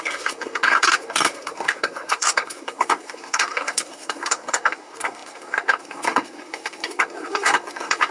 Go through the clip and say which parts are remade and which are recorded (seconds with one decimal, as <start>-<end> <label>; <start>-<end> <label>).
0.0-8.1 remade